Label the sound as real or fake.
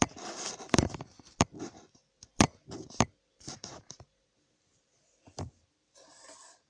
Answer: fake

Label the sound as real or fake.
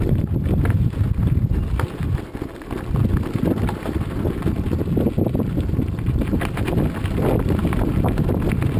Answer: real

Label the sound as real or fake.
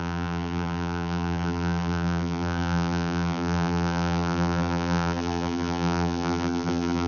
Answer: fake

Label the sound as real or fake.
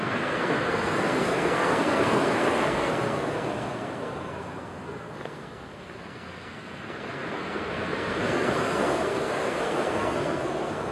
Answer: fake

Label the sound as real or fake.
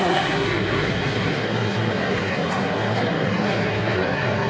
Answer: fake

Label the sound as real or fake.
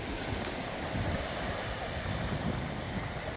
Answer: real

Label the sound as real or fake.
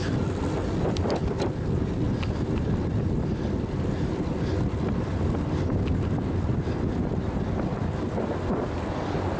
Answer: real